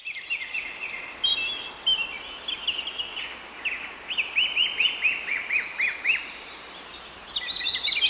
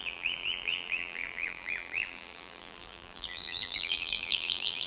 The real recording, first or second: first